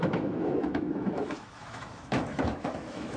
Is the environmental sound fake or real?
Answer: fake